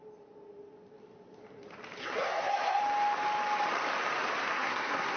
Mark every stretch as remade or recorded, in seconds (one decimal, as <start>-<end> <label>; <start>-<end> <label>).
0.0-2.0 recorded; 2.0-2.8 remade; 2.8-4.5 recorded; 4.5-5.2 remade